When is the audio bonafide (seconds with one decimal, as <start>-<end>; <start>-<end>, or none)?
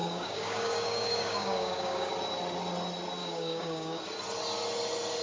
2.1-3.2; 4.0-5.2